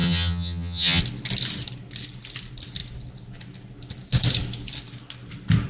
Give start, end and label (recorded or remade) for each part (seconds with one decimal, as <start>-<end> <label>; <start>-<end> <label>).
0.0-1.0 remade; 1.0-5.7 recorded